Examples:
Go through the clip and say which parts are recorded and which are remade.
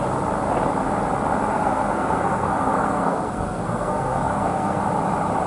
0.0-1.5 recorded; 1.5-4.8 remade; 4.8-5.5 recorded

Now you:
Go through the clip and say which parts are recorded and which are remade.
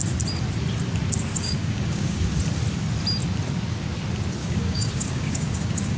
0.0-1.3 recorded; 1.3-2.2 remade; 2.2-4.4 recorded; 4.4-6.0 remade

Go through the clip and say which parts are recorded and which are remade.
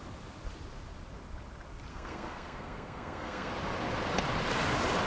0.0-1.9 recorded; 1.9-3.5 remade; 3.5-5.1 recorded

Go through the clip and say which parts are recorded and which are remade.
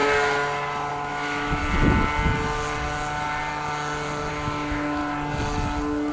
0.0-0.9 recorded; 0.9-1.6 remade; 1.6-4.3 recorded; 4.3-5.0 remade; 5.0-6.1 recorded